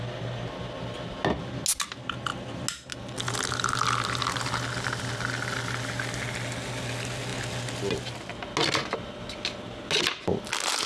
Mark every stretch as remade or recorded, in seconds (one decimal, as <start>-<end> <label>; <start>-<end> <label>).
0.0-10.9 recorded